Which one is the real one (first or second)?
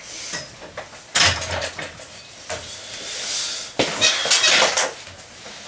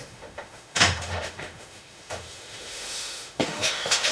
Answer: first